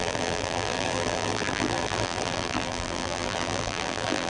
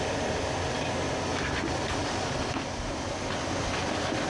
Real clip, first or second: second